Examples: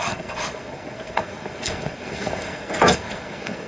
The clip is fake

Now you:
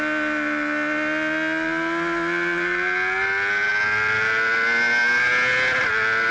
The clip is real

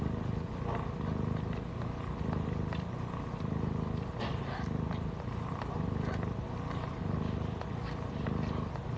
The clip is real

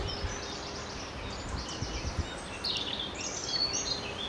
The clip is real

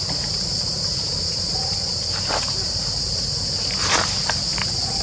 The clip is real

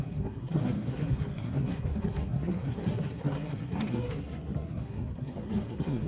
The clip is fake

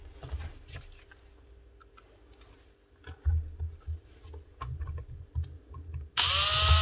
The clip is real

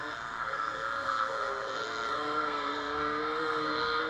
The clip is fake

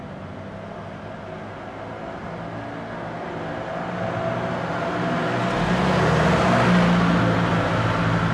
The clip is real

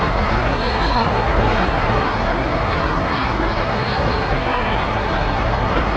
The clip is fake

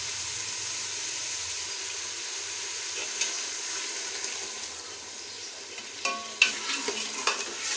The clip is real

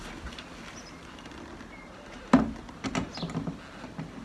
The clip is real